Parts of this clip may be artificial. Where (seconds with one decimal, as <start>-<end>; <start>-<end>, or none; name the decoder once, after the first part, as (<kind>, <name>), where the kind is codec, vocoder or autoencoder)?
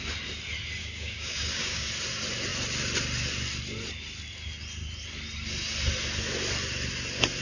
0.8-1.9 (codec, DAC)